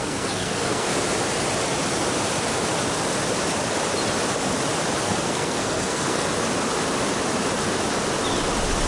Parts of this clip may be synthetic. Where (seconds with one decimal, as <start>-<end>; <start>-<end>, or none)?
0.0-0.9; 5.0-6.3

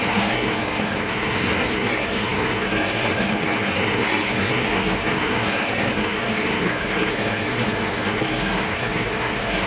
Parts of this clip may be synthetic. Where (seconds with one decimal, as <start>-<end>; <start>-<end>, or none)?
0.0-9.7